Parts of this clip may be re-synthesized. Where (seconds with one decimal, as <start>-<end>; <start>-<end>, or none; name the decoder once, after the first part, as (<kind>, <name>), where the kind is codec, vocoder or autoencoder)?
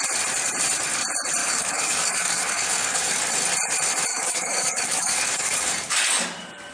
1.4-3.2 (codec, DAC); 4.1-6.2